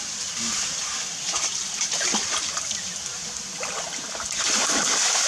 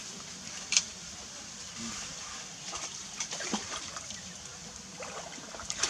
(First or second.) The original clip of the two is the first